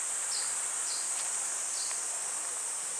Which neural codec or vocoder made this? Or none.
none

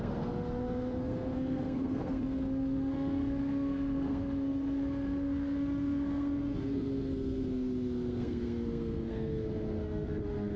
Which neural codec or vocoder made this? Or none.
codec, SNAC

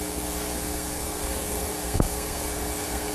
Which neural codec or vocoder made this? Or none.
codec, SNAC